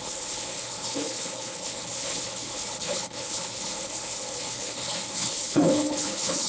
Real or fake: fake